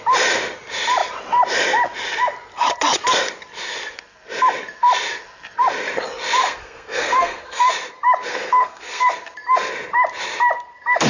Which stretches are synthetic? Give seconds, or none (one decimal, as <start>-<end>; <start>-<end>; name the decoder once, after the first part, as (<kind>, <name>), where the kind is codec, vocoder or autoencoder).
6.4-7.7 (codec, SNAC); 8.3-9.1

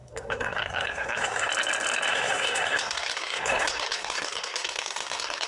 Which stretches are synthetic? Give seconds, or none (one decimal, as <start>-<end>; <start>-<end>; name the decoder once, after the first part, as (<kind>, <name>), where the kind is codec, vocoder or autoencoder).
0.0-1.5 (codec, SNAC); 2.1-5.5

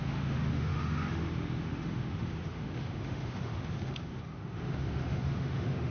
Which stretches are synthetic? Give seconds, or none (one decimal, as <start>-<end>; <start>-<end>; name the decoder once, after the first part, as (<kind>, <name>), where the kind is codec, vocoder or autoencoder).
0.0-5.9 (autoencoder, DAC-VAE)

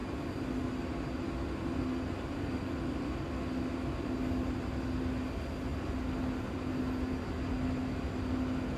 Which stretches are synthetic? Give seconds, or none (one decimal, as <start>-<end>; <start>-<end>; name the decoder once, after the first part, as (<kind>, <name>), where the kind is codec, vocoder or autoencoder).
none

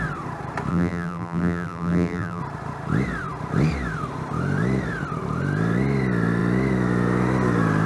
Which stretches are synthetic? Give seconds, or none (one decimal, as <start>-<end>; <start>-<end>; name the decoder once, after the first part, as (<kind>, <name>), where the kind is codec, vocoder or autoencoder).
0.7-2.4 (vocoder, BigVGAN v2)